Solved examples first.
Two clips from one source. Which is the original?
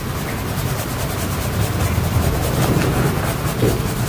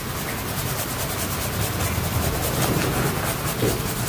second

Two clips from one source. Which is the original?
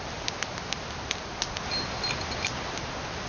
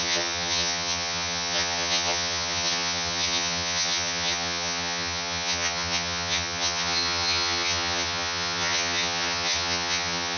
first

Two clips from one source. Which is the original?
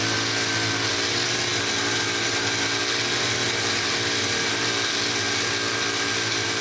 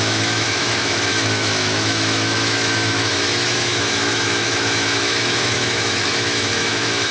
first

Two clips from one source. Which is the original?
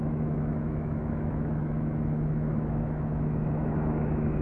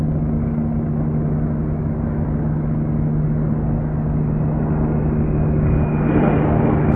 second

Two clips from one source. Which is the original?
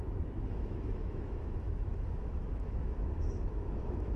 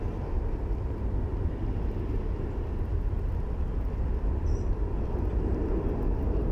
second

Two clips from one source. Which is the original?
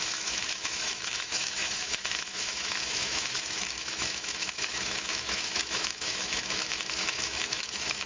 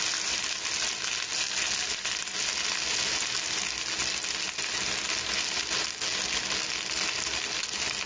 second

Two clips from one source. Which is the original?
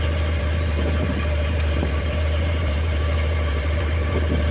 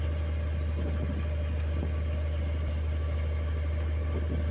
second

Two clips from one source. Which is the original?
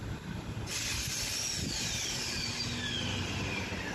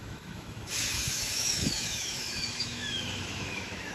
first